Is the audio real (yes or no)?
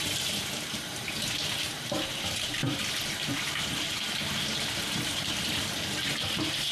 no